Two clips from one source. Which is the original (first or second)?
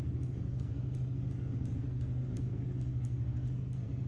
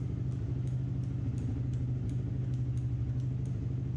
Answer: second